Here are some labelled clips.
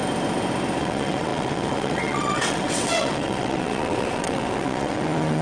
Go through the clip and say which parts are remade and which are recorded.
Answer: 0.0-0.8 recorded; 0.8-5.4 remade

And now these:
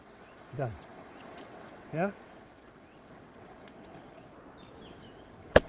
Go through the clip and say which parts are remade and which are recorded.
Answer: 0.0-4.3 remade; 4.3-4.9 recorded; 4.9-5.7 remade

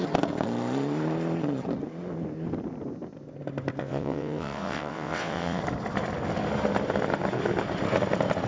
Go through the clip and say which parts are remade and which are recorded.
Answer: 0.0-3.8 recorded; 3.8-5.6 remade; 5.6-8.5 recorded

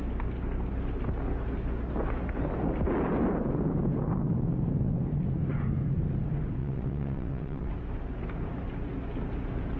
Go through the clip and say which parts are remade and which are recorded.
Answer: 0.0-6.6 recorded; 6.6-7.7 remade; 7.7-9.8 recorded

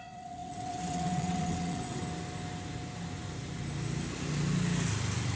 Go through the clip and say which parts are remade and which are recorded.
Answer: 0.0-2.0 remade; 2.0-5.4 recorded

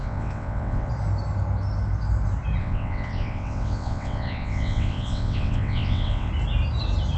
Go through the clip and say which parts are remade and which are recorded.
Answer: 0.0-0.9 remade; 0.9-2.6 recorded; 2.6-6.3 remade; 6.3-7.2 recorded